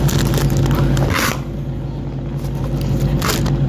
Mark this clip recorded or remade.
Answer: recorded